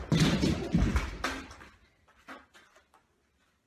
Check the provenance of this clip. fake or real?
real